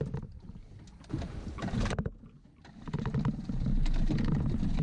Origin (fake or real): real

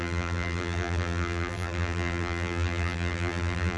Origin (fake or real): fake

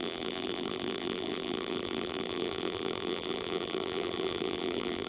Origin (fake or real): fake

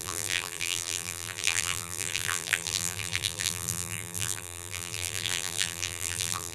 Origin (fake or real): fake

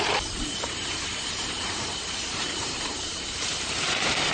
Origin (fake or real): fake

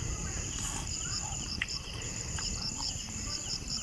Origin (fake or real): fake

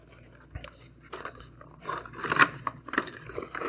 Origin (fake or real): fake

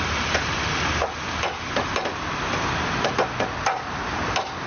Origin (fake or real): real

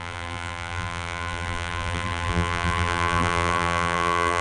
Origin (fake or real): fake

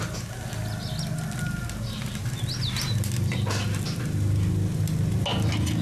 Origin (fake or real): real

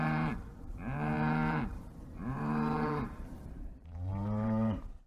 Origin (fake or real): fake